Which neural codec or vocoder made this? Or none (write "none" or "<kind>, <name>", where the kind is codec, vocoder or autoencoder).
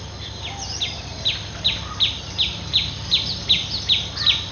none